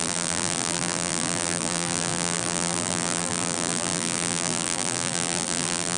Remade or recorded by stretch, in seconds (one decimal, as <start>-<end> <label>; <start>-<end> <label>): 0.0-6.0 remade